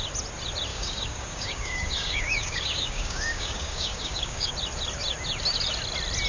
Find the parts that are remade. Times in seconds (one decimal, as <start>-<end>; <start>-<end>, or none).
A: 0.7-4.5